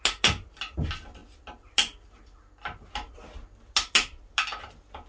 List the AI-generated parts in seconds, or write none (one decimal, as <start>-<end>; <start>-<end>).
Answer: none